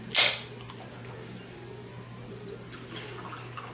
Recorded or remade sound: recorded